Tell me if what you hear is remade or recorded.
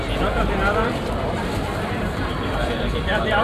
remade